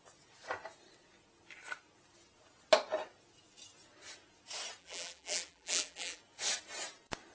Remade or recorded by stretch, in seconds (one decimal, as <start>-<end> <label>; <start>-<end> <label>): 0.0-4.8 recorded; 4.8-6.2 remade; 6.2-7.3 recorded